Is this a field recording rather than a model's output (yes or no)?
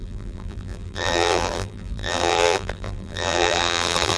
no